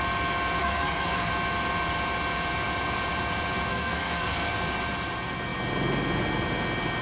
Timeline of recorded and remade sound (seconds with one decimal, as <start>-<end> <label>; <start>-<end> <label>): 0.0-0.6 recorded; 0.6-1.3 remade; 1.3-3.7 recorded; 3.7-4.5 remade; 4.5-7.0 recorded